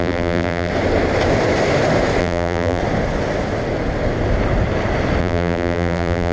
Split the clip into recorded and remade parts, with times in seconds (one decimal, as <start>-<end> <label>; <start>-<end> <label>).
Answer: 0.0-0.7 remade; 0.7-2.2 recorded; 2.2-2.8 remade; 2.8-5.2 recorded; 5.2-6.3 remade